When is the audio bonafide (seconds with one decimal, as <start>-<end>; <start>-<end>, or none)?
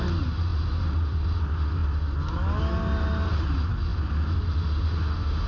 0.0-5.5